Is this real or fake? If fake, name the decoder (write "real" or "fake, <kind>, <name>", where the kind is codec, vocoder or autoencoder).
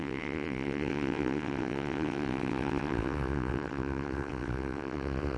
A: fake, vocoder, WaveNeXt